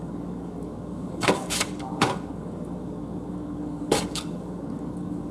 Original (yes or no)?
no